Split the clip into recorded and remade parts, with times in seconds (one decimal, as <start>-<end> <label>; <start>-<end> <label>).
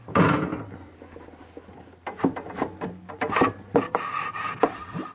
0.0-5.1 recorded